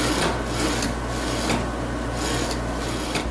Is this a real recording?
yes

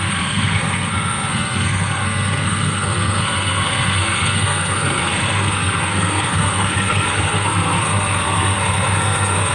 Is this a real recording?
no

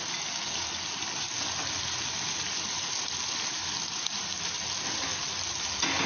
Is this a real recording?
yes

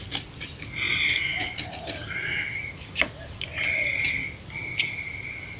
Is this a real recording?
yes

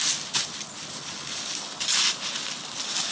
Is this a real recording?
yes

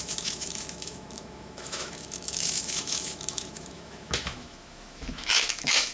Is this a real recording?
no